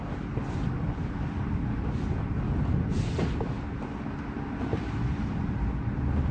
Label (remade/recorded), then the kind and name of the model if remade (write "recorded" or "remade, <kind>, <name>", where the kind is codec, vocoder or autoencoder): recorded